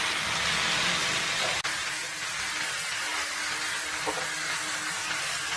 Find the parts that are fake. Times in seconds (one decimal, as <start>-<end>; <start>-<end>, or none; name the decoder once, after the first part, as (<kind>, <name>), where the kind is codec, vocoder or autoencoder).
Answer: none